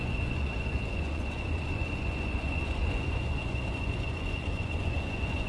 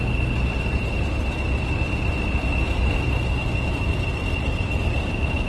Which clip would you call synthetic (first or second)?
first